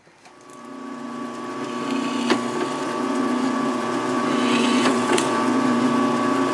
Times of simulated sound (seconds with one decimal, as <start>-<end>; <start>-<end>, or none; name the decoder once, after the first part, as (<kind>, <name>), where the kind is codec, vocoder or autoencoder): 2.8-5.9 (vocoder, Vocos)